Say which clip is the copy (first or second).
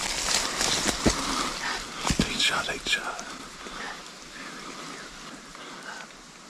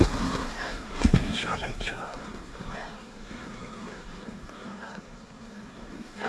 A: second